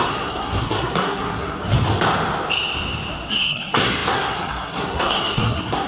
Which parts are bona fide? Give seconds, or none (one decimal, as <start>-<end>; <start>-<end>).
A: 1.6-3.3